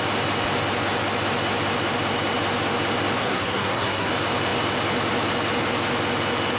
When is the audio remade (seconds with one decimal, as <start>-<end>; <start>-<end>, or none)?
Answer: 3.2-4.1